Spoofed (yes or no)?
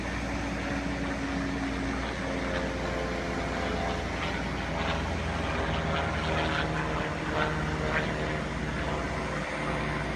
no